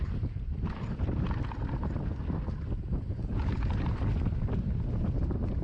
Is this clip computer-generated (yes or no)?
no